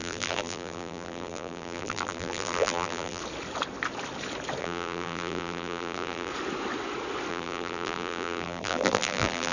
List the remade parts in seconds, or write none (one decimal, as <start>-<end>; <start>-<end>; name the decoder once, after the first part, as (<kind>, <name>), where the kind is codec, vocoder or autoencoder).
0.0-3.2 (vocoder, BigVGAN v2); 4.6-6.3; 7.3-9.5